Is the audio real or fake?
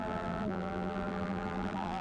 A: fake